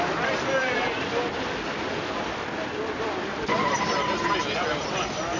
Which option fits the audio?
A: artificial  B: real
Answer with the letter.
B